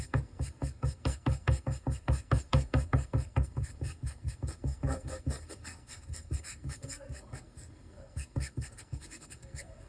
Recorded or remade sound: remade